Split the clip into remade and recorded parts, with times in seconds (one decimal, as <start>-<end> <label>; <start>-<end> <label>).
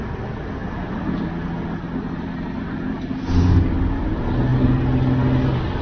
0.0-5.8 recorded